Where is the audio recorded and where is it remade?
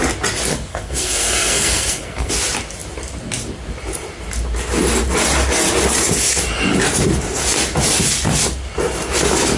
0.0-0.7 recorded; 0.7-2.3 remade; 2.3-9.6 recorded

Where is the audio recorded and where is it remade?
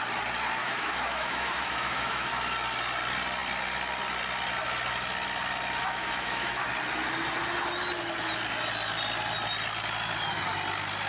0.0-0.6 recorded; 0.6-2.3 remade; 2.3-5.8 recorded; 5.8-6.7 remade; 6.7-11.1 recorded